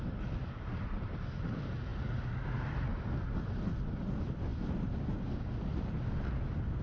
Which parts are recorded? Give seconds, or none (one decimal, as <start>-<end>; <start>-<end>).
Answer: 0.0-6.8

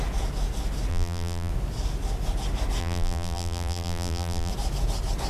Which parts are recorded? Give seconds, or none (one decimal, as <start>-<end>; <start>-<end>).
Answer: 0.0-0.9; 1.5-2.8; 4.5-5.3

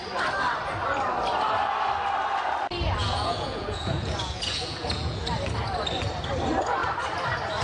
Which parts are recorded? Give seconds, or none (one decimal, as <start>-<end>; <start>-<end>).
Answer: 0.0-3.0; 5.2-7.6